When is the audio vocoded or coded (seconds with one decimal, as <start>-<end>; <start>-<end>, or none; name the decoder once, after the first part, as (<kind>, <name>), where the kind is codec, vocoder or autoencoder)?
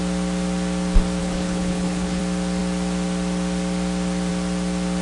1.2-2.2 (codec, HILCodec)